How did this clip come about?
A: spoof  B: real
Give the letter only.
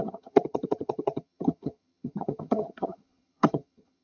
A